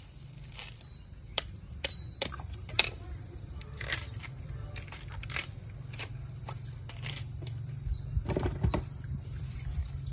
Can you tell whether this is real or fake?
fake